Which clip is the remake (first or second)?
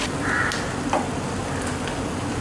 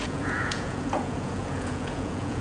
second